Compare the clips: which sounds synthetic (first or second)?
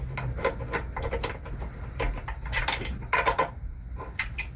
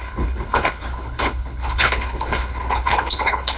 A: second